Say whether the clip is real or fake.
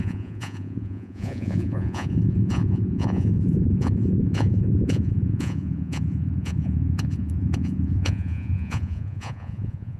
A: fake